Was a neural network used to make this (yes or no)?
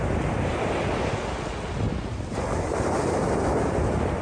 no